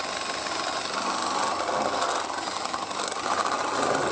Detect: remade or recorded recorded